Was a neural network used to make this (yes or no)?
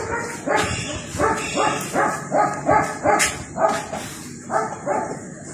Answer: no